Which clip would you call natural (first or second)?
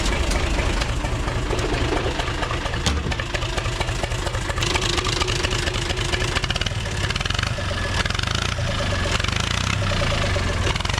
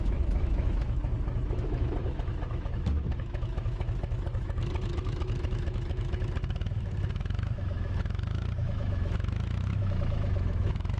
first